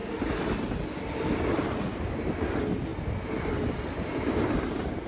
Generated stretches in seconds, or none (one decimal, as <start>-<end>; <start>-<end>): none